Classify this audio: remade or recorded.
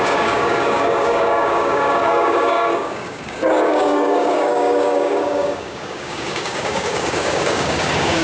remade